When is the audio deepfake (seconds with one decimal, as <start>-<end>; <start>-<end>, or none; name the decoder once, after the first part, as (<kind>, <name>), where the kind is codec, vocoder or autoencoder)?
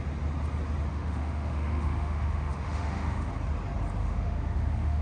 0.9-3.3 (autoencoder, DAC-VAE); 4.0-5.0